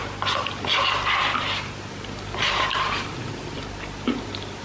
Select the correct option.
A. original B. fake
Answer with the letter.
A